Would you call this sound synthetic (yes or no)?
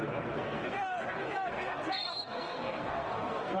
yes